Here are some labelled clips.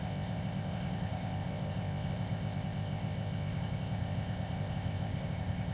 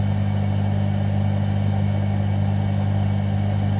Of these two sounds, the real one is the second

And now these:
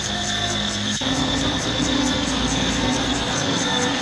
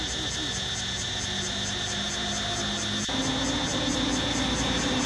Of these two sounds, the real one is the second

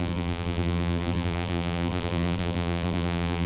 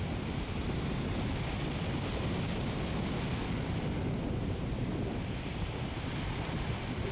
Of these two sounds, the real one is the second